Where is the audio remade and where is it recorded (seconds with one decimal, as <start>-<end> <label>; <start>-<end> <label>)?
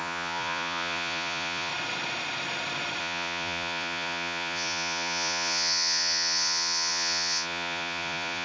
0.0-1.7 remade; 1.7-3.0 recorded; 3.0-8.4 remade